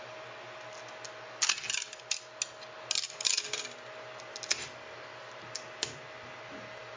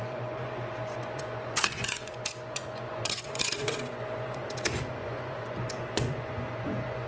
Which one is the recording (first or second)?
first